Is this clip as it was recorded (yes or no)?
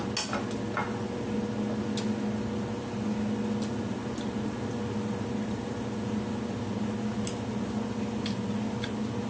yes